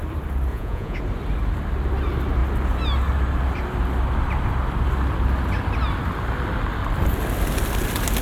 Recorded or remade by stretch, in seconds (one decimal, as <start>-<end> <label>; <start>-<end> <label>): 0.0-0.5 recorded; 0.5-1.0 remade; 1.0-8.2 recorded